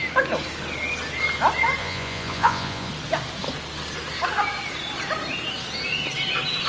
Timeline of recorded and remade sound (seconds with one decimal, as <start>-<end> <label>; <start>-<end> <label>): 0.0-1.8 recorded; 1.8-2.9 remade; 2.9-6.7 recorded